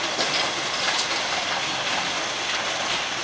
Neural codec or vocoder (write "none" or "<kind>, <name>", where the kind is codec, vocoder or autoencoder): none